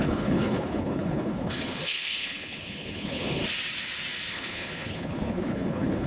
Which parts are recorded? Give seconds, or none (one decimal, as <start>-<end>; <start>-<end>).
3.4-4.3

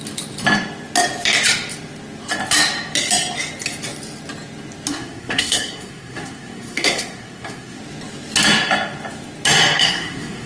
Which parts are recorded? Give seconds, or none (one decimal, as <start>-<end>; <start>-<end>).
0.0-4.9; 7.8-9.8

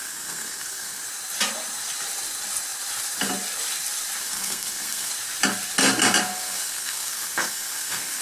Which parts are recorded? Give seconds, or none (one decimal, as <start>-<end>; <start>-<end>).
1.0-4.2; 5.1-6.3

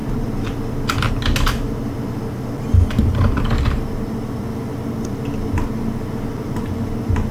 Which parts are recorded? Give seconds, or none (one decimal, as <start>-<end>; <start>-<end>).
0.0-7.3